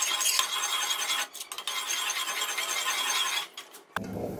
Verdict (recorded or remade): recorded